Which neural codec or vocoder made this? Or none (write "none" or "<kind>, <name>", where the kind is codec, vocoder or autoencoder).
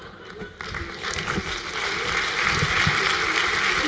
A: none